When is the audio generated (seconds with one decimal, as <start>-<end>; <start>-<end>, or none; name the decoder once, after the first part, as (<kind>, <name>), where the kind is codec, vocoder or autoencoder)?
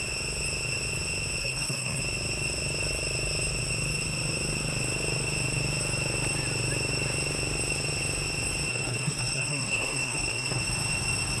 1.4-2.0 (codec, SNAC); 8.7-10.6